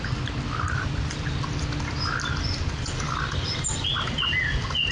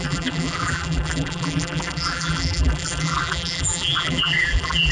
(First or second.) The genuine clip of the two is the first